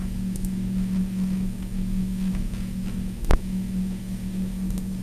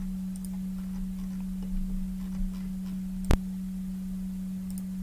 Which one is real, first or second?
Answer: second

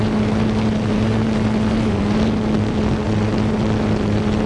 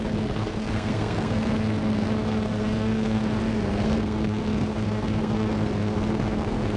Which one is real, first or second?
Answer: first